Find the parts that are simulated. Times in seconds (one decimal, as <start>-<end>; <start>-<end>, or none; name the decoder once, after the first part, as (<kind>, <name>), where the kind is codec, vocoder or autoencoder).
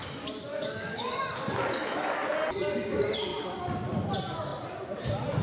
0.5-1.2 (autoencoder, DAC-VAE); 1.8-2.3